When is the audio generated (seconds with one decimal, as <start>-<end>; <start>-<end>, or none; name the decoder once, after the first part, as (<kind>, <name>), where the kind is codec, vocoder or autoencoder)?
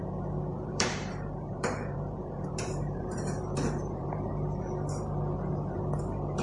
0.5-4.3 (vocoder, BigVGAN v2)